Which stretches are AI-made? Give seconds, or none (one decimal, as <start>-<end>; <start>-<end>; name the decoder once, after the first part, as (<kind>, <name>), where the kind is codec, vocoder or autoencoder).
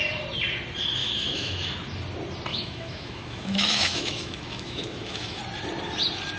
1.0-1.7 (autoencoder, DAC-VAE); 2.5-5.4